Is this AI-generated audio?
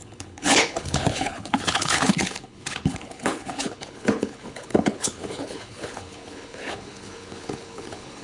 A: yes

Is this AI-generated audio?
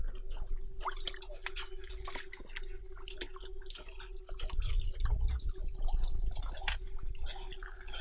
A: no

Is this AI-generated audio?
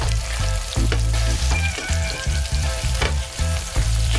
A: yes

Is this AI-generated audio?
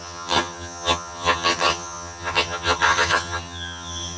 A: yes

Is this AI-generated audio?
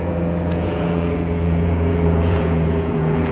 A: yes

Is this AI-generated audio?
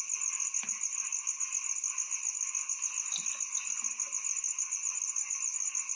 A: no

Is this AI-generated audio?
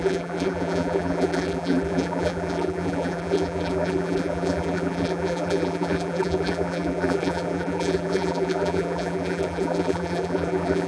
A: yes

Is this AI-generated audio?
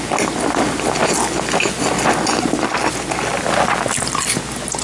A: no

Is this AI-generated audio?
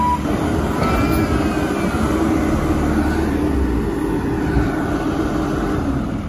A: no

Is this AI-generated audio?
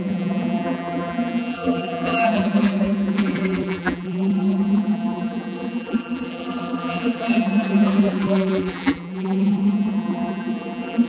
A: yes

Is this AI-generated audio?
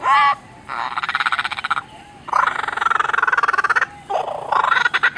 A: no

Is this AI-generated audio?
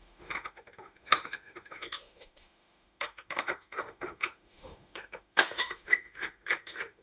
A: yes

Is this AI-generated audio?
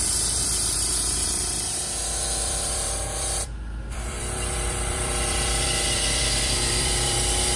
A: yes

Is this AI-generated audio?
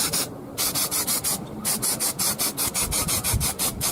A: no